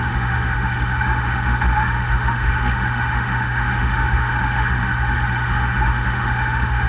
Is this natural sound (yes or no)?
no